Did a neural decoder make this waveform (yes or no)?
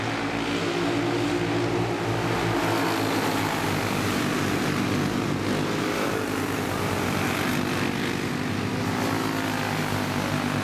no